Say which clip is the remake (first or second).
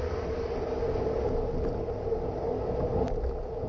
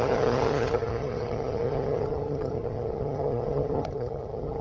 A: second